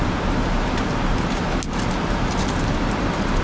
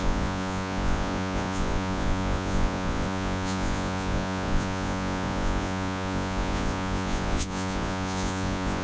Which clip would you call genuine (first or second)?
first